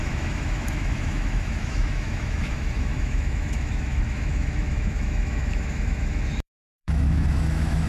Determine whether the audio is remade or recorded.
remade